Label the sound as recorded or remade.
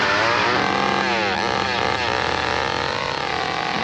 recorded